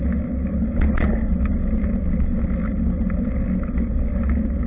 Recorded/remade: recorded